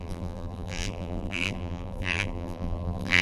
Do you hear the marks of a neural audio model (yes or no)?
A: yes